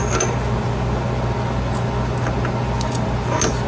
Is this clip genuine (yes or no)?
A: yes